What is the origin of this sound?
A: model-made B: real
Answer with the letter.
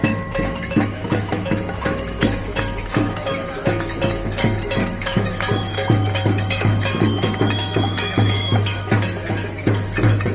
A